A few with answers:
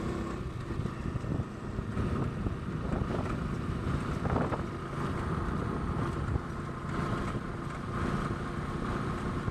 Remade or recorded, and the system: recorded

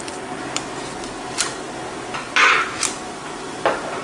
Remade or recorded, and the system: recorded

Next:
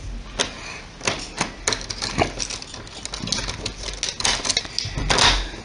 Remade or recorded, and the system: recorded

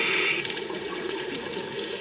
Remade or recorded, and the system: remade, vocoder, Vocos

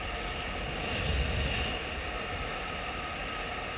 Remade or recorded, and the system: recorded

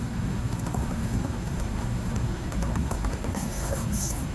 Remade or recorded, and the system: remade, codec, SNAC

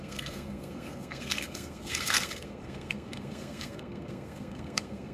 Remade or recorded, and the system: remade, codec, SNAC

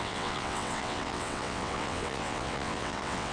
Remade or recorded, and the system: remade, vocoder, WaveNeXt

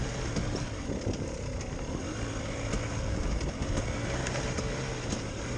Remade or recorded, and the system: recorded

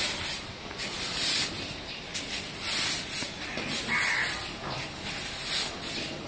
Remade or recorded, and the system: recorded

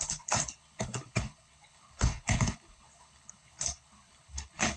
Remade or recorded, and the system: remade, codec, HILCodec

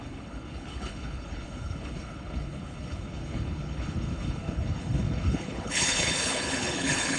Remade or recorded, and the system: remade, codec, HILCodec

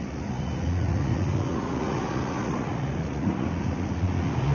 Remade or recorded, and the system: remade, vocoder, Vocos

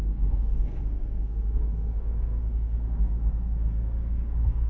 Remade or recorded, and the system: remade, codec, SNAC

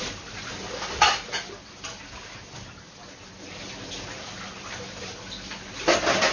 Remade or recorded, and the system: recorded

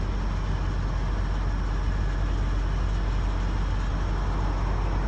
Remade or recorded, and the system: recorded